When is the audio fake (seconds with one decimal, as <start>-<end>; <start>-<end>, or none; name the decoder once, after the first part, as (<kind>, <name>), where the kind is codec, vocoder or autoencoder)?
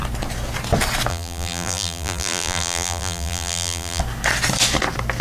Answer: 1.1-4.0 (vocoder, BigVGAN v2)